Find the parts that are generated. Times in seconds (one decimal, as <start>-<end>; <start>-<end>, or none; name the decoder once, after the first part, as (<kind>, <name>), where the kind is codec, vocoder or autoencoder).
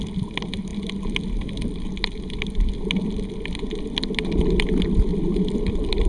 5.1-6.1 (vocoder, BigVGAN v2)